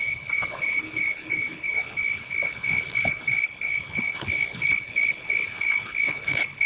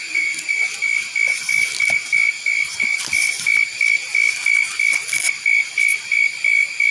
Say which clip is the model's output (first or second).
first